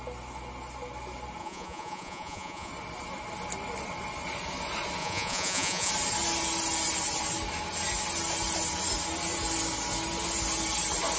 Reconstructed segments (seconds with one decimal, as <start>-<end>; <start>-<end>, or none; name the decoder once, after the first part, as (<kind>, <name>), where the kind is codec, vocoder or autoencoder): 1.4-2.7 (vocoder, Vocos); 5.0-5.9